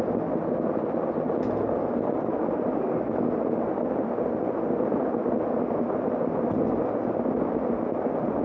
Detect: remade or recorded recorded